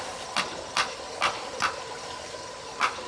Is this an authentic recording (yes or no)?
yes